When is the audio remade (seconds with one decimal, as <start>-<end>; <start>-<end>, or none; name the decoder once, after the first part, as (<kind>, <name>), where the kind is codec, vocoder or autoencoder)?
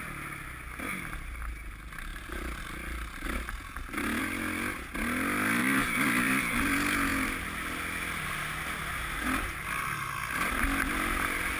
5.6-6.4 (vocoder, BigVGAN v2)